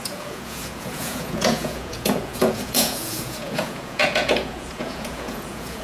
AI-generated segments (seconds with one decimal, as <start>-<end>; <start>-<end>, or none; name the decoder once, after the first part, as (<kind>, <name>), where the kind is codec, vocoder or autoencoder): 0.0-5.8 (vocoder, Vocos)